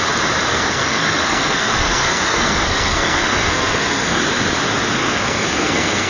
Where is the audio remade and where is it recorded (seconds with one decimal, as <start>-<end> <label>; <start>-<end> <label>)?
0.0-0.5 recorded; 0.5-4.2 remade; 4.2-5.0 recorded; 5.0-6.1 remade